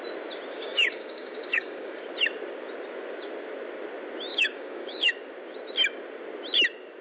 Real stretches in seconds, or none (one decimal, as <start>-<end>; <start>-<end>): 0.0-0.5; 2.0-4.3; 5.1-7.0